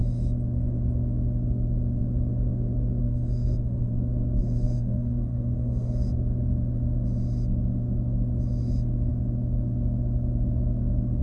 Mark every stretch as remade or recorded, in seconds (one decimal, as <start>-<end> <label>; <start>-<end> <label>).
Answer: 0.0-3.0 recorded; 3.0-3.9 remade; 3.9-4.4 recorded; 4.4-6.1 remade; 6.1-11.2 recorded